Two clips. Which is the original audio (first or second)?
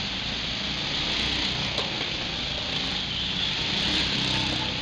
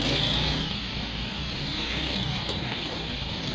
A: first